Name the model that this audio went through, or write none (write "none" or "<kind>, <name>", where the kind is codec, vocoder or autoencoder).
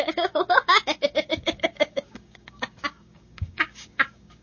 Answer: codec, DAC